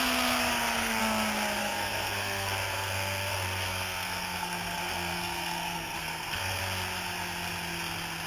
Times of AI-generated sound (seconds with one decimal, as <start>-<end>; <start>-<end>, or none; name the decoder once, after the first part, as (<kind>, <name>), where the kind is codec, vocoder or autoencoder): 0.5-1.0 (codec, SNAC); 1.6-6.6